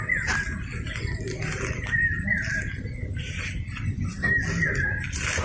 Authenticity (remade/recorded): recorded